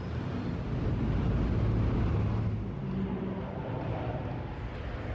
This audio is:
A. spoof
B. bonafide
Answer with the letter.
B